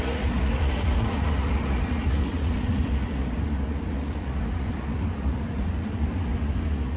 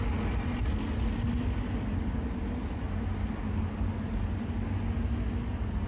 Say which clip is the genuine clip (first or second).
second